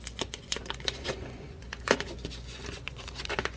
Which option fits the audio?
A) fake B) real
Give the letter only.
A